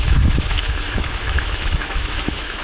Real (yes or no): no